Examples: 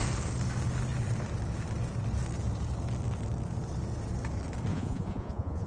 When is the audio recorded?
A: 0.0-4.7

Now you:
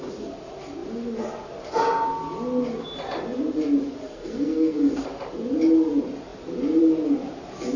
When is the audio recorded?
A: 0.0-4.0; 5.0-7.8

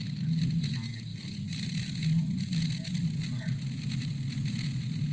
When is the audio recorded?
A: 0.0-5.1

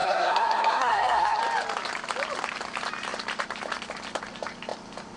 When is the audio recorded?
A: 1.4-5.2